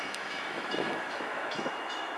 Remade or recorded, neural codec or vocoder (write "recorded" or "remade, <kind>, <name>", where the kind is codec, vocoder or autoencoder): remade, autoencoder, DAC-VAE